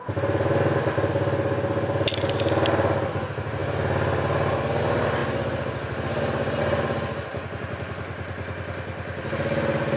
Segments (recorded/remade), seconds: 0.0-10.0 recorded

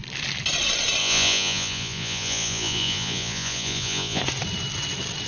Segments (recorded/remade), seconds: 0.0-1.0 recorded; 1.0-4.2 remade; 4.2-5.3 recorded

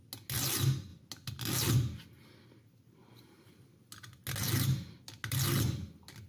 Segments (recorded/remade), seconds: 0.0-6.3 recorded

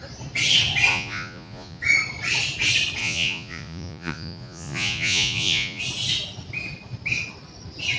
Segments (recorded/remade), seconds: 0.0-0.9 recorded; 0.9-1.8 remade; 1.8-3.0 recorded; 3.0-5.8 remade; 5.8-8.0 recorded

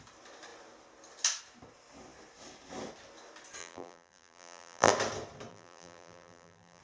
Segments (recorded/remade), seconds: 0.0-3.6 recorded; 3.6-4.9 remade; 4.9-5.5 recorded; 5.5-6.8 remade